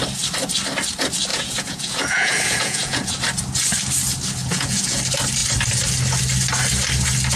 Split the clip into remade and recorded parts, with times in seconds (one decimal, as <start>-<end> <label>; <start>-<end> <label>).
0.0-1.3 recorded; 1.3-3.1 remade; 3.1-4.4 recorded; 4.4-5.0 remade; 5.0-7.4 recorded